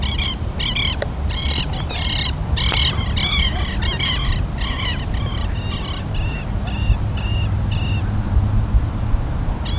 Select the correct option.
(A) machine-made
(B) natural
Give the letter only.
B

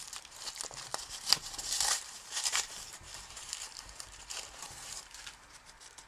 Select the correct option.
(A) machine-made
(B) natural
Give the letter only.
A